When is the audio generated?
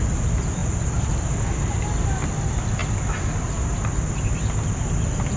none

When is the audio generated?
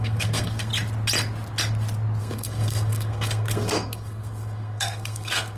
0.0-0.7 (codec, SNAC); 2.2-5.6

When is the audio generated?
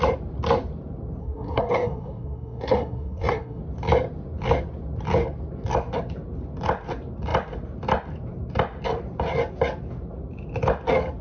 1.2-3.6 (codec, SNAC)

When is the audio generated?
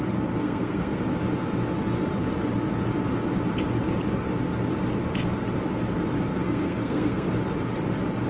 0.4-1.0 (codec, SNAC); 6.3-7.3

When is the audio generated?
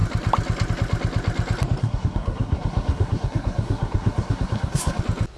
1.8-5.0 (codec, SNAC)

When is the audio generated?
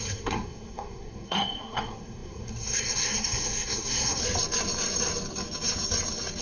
0.0-4.2 (codec, SNAC)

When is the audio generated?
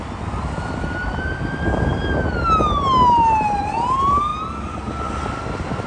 none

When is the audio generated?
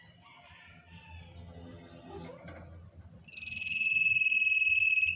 none